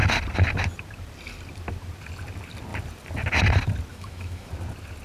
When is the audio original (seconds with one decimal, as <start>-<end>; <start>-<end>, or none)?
0.0-3.9; 4.5-5.0